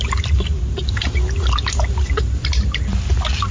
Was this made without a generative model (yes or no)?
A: yes